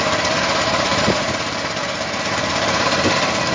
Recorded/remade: remade